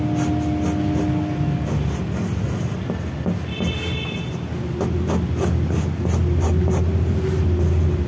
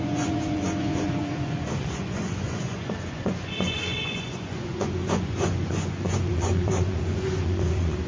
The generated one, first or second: second